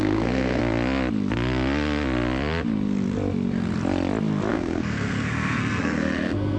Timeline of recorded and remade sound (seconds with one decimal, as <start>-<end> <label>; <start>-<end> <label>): 0.0-0.6 remade; 0.6-4.5 recorded; 4.5-6.6 remade